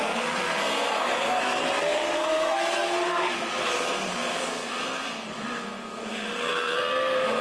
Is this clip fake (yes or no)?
yes